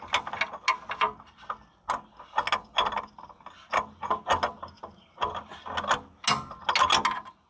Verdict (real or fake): real